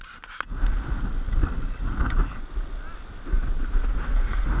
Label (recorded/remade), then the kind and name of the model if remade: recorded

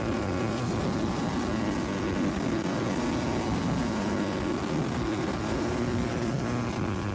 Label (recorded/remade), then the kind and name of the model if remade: recorded